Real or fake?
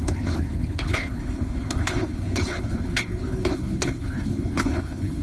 fake